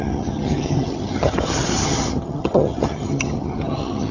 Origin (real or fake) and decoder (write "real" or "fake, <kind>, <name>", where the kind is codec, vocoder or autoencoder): fake, vocoder, HiFi-GAN